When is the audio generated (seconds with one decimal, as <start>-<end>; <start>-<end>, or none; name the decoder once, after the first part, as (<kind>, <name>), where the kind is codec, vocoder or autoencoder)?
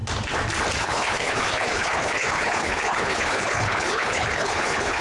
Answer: 0.8-5.0 (codec, HILCodec)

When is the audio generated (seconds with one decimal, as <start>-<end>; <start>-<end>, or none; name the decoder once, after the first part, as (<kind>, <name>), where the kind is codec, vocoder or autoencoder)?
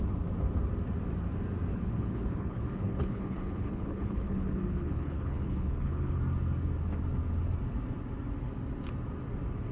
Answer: 1.7-6.2 (codec, HILCodec)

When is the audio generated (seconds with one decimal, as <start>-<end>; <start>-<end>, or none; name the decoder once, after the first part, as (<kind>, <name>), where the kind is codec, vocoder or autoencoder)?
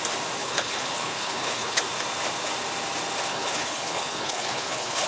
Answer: 0.4-1.8 (codec, HILCodec); 3.3-5.1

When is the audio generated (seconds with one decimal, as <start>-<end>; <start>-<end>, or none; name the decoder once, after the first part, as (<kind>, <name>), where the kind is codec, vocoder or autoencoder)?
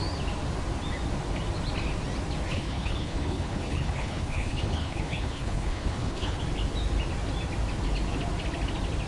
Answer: 2.5-6.4 (codec, HILCodec)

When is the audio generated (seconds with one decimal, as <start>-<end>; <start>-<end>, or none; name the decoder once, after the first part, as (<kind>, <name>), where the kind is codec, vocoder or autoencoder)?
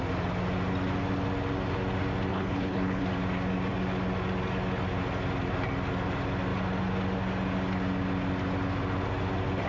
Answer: 2.3-3.0 (codec, HILCodec)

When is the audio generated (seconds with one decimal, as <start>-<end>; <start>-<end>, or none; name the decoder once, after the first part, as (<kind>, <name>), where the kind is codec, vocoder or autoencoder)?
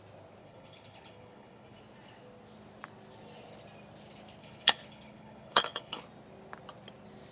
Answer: 0.4-1.8 (codec, HILCodec); 4.4-6.0